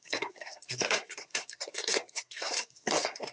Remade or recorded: remade